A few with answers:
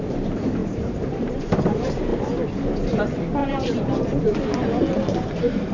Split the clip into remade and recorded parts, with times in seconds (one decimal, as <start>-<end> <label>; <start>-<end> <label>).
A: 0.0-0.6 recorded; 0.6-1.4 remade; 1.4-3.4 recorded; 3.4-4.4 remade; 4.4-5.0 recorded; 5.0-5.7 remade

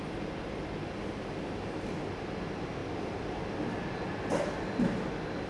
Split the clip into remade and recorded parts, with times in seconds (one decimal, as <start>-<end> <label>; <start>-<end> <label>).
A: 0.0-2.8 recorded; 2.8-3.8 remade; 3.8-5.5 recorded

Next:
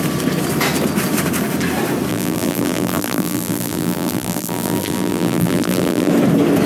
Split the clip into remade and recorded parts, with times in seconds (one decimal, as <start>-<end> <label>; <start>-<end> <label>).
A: 0.0-2.1 recorded; 2.1-6.1 remade; 6.1-6.7 recorded

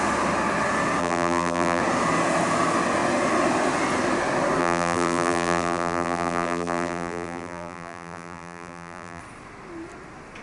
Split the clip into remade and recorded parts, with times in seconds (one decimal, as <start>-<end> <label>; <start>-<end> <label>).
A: 0.0-1.0 recorded; 1.0-1.8 remade; 1.8-4.6 recorded; 4.6-9.2 remade; 9.2-10.4 recorded

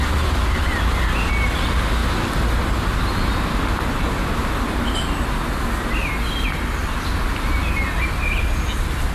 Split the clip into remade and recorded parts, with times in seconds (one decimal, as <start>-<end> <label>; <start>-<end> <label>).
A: 0.0-6.8 recorded; 6.8-7.5 remade; 7.5-9.1 recorded

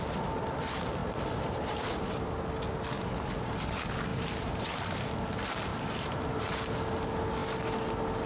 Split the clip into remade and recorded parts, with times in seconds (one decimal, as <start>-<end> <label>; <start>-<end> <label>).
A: 0.0-1.0 recorded; 1.0-2.1 remade; 2.1-4.1 recorded; 4.1-5.0 remade; 5.0-5.7 recorded; 5.7-6.6 remade; 6.6-8.3 recorded